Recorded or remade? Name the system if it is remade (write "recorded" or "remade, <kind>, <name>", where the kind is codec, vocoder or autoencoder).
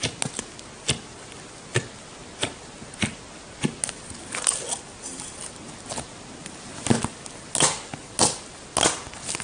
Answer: recorded